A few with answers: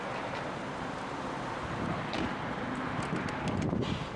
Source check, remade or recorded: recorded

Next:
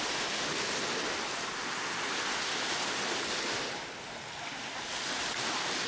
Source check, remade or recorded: recorded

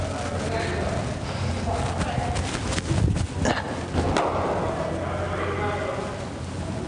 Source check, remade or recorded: recorded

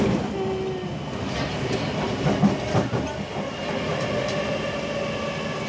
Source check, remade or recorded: recorded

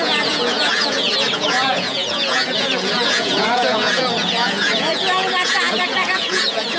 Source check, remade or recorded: remade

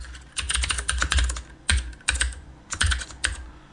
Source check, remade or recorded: remade